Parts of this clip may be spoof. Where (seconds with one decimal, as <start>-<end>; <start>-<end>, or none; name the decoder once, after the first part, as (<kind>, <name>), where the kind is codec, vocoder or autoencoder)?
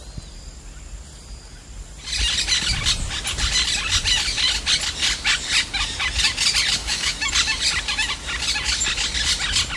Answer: 6.8-7.3 (autoencoder, DAC-VAE)